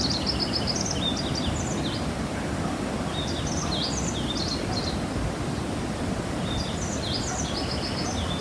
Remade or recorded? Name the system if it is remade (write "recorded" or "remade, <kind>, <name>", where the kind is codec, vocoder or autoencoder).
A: recorded